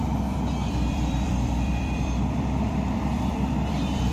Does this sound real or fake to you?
fake